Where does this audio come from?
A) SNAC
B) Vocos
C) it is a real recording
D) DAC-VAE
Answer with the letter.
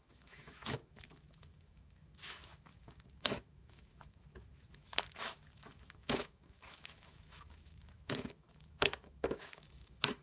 D